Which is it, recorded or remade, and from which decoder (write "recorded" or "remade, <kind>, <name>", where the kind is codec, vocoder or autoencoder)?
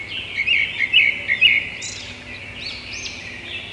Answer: recorded